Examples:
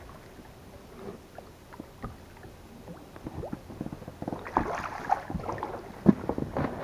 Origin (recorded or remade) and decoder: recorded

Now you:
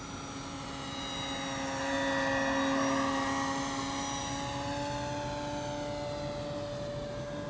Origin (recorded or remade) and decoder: recorded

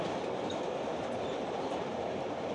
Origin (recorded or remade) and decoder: recorded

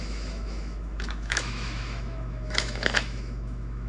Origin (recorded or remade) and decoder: remade, autoencoder, DAC-VAE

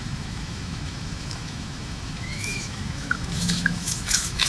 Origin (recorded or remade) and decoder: remade, autoencoder, DAC-VAE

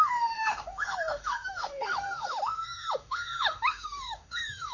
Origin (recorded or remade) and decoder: remade, autoencoder, DAC-VAE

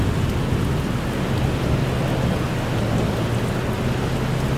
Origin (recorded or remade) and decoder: recorded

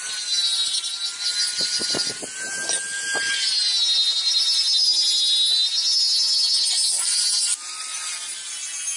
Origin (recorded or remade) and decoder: recorded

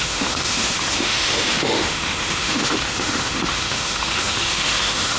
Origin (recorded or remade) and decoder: remade, autoencoder, DAC-VAE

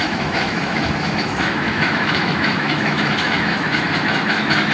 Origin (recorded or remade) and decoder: remade, autoencoder, DAC-VAE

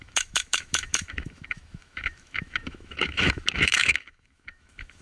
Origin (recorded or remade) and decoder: remade, autoencoder, DAC-VAE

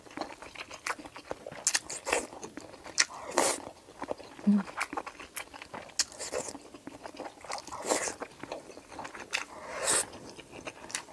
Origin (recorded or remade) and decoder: recorded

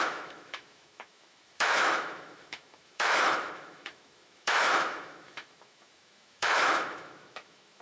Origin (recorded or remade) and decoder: remade, autoencoder, DAC-VAE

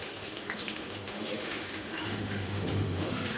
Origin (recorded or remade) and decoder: remade, autoencoder, DAC-VAE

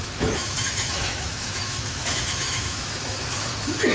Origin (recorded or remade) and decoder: remade, autoencoder, DAC-VAE